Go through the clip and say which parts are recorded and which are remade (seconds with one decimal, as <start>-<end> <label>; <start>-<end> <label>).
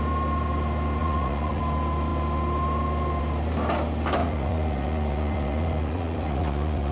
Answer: 0.0-1.0 recorded; 1.0-1.6 remade; 1.6-4.2 recorded; 4.2-6.9 remade